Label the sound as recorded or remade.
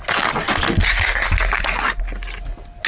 recorded